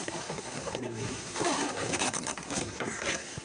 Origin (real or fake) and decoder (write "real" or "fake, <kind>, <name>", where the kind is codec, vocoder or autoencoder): fake, codec, SNAC